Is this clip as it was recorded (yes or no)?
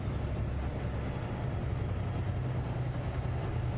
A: yes